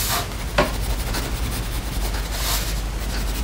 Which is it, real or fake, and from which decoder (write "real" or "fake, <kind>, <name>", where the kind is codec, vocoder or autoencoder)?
real